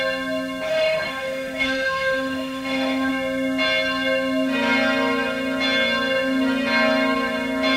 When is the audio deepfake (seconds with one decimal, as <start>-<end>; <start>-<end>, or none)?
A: 0.7-3.1